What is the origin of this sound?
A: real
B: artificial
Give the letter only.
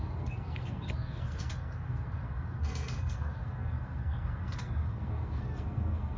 B